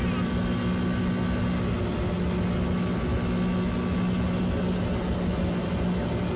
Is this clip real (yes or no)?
yes